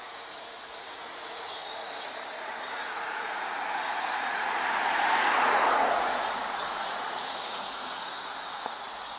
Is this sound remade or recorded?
remade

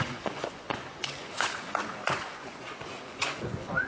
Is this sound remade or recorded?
remade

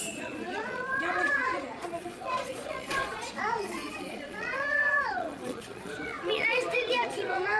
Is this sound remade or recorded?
remade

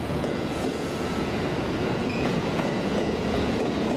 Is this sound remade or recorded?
remade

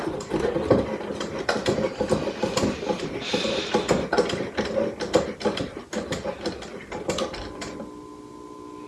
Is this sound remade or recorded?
recorded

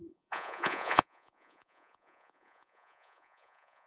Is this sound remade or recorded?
remade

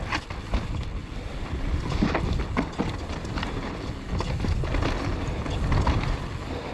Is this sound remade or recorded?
recorded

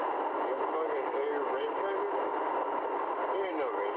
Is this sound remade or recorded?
recorded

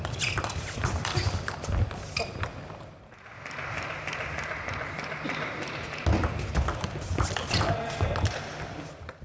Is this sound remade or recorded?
recorded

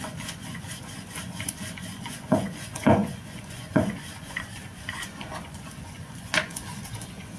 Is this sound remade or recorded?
remade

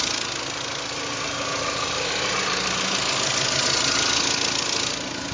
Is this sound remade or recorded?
recorded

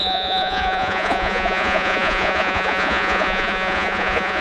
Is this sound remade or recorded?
remade